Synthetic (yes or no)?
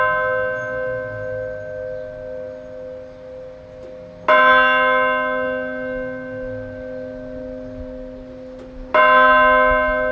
no